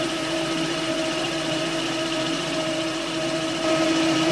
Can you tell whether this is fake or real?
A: fake